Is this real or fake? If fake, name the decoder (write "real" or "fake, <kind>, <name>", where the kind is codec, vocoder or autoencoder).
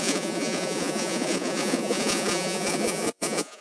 fake, vocoder, Vocos